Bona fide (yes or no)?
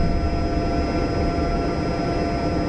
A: yes